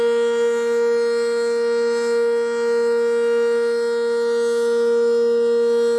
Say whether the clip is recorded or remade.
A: recorded